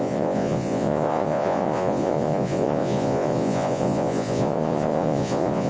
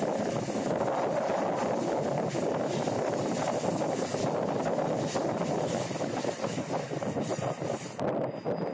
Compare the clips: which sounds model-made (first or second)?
first